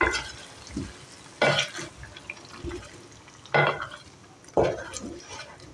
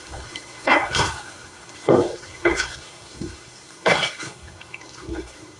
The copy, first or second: second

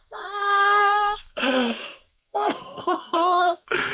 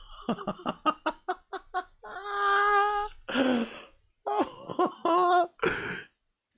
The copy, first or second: first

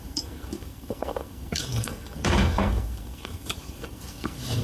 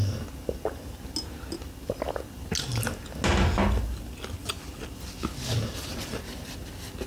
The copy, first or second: first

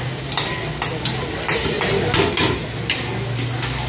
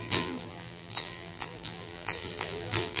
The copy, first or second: second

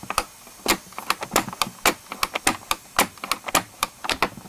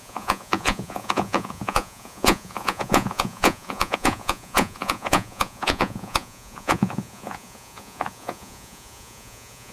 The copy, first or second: second